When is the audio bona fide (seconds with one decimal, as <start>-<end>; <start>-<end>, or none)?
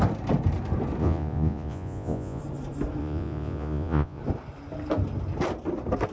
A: 0.0-1.0; 2.4-3.0; 4.2-6.1